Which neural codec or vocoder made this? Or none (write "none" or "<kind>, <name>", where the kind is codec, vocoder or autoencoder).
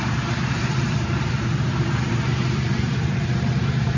vocoder, BigVGAN v2